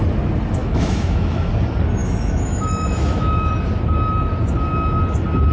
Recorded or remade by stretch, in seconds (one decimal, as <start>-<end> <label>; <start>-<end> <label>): 0.0-0.6 recorded; 0.6-1.5 remade; 1.5-2.0 recorded; 2.0-3.5 remade; 3.5-5.5 recorded